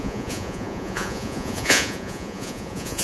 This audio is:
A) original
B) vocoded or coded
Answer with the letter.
B